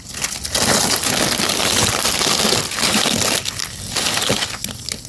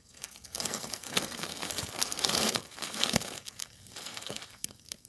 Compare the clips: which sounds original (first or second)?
first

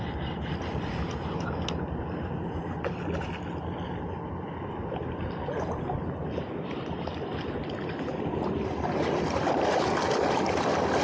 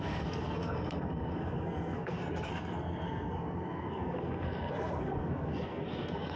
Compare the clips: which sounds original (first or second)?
first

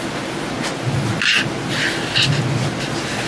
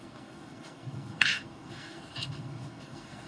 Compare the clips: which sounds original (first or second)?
first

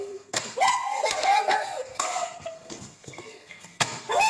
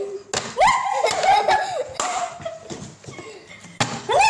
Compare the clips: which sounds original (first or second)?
second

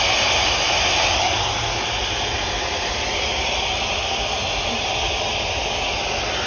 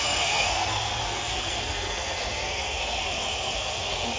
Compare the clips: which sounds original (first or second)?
first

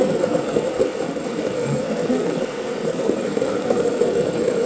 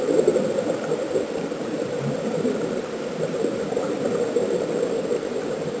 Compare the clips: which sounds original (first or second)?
second